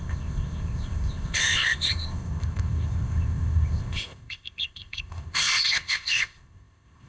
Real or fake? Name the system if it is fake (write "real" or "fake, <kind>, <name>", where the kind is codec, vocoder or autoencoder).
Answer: fake, codec, ZipCodec